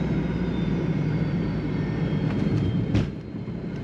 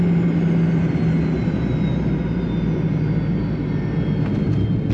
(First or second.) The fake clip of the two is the first